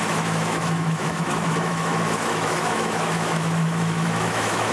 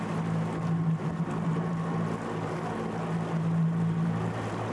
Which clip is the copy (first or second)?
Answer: first